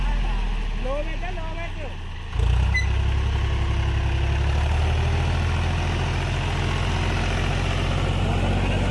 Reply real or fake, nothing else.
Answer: real